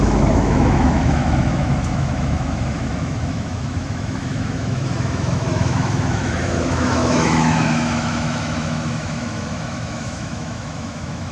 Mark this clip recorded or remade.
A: remade